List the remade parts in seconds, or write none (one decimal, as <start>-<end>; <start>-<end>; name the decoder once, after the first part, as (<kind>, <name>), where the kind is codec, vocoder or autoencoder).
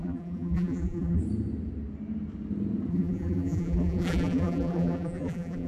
0.0-1.2 (vocoder, BigVGAN v2); 2.9-5.7